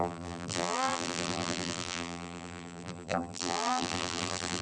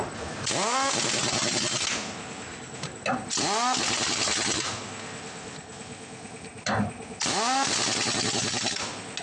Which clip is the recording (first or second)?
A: second